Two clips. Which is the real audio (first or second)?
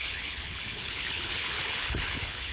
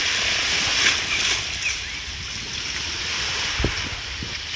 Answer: second